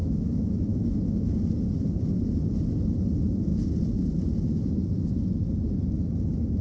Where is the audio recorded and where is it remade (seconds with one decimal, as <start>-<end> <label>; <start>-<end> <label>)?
0.0-1.3 remade; 1.3-6.6 recorded